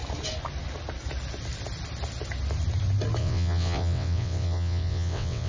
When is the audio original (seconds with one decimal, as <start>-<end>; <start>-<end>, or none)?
0.0-3.2